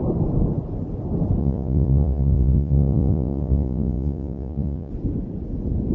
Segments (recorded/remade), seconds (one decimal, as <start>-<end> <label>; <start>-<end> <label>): 0.0-1.4 recorded; 1.4-4.9 remade; 4.9-5.9 recorded